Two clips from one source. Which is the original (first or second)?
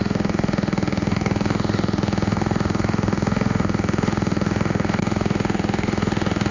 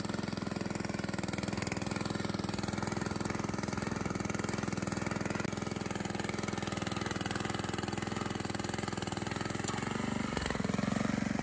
second